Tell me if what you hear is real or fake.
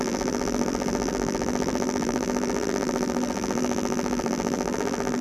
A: fake